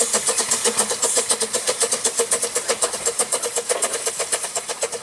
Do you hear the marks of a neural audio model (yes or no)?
yes